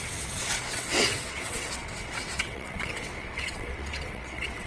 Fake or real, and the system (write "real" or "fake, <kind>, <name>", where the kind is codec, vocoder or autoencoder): fake, vocoder, WaveNeXt